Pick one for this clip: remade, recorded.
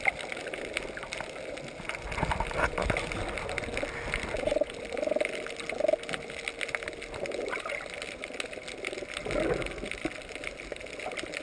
recorded